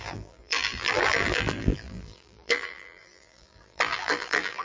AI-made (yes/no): yes